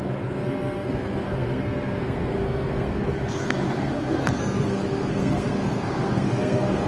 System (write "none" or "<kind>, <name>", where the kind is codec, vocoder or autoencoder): codec, SNAC